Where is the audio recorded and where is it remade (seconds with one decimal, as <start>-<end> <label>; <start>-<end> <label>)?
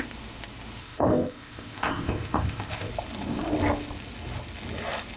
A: 0.0-0.8 recorded; 0.8-2.9 remade; 2.9-5.2 recorded